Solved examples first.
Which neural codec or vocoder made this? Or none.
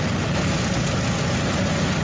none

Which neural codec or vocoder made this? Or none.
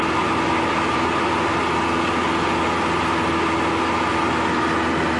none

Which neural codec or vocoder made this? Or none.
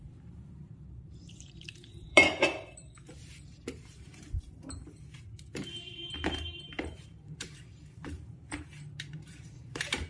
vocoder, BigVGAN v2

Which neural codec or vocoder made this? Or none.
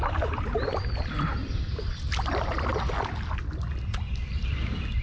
vocoder, BigVGAN v2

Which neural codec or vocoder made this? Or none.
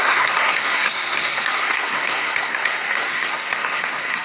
codec, SNAC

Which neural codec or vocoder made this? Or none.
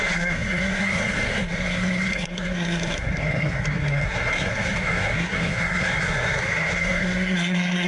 codec, SNAC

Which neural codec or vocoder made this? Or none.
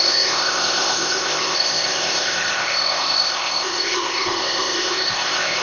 codec, ZipCodec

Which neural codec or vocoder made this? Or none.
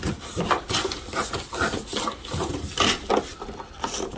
none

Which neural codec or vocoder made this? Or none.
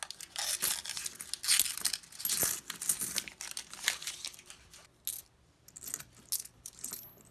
none